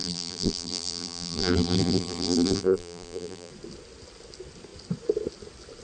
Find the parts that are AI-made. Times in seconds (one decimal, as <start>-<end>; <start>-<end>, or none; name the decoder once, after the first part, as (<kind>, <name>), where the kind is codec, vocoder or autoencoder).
0.0-3.5 (vocoder, BigVGAN v2)

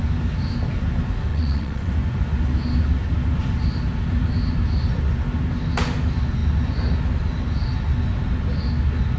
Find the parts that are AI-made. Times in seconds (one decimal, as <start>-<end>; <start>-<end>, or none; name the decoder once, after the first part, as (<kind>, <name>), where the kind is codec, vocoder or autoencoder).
1.3-1.9 (vocoder, WaveNeXt)

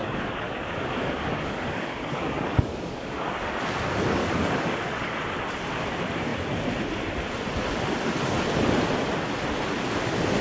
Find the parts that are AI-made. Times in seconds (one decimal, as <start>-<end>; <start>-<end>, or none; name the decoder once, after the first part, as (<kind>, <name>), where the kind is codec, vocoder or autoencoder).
0.0-3.4 (codec, DAC); 4.2-5.2

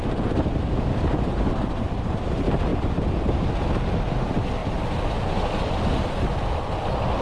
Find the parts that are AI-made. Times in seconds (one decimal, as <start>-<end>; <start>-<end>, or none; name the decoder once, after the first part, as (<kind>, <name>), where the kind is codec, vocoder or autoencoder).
none

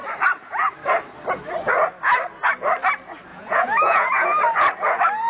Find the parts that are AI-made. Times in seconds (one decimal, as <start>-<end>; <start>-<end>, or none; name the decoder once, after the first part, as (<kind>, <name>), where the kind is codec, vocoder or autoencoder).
3.3-4.1 (vocoder, Vocos)

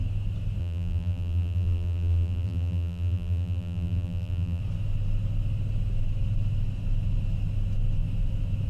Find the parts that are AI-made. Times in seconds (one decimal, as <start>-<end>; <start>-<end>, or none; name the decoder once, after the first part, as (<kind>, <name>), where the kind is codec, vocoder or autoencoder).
0.6-4.6 (vocoder, BigVGAN v2)

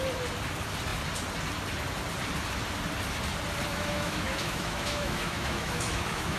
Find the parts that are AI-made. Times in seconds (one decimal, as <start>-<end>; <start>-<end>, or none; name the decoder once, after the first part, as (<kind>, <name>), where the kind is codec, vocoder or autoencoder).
3.7-6.4 (autoencoder, DAC-VAE)

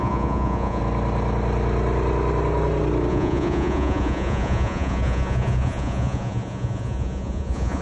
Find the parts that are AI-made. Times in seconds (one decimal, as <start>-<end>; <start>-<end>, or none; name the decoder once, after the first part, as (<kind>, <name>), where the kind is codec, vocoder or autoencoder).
0.0-0.8 (vocoder, Vocos); 3.1-7.8